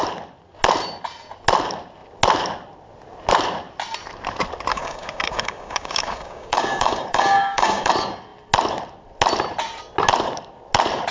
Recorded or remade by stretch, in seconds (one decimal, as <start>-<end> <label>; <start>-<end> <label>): 0.0-4.7 recorded; 4.7-7.9 remade; 7.9-11.1 recorded